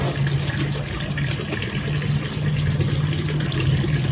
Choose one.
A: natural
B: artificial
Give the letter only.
A